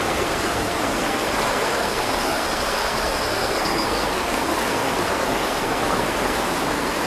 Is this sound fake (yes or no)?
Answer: yes